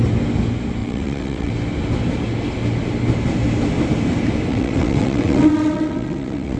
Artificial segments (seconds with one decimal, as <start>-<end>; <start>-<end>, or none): 0.8-1.5; 4.5-6.6